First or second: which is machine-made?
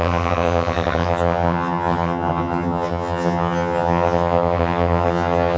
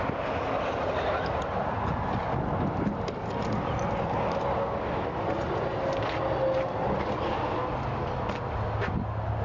first